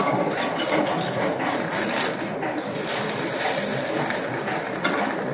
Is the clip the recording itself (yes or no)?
no